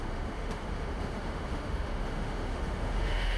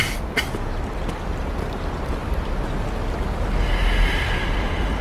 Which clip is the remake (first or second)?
first